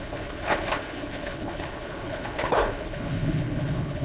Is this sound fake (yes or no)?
yes